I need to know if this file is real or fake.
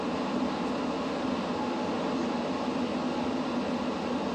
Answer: real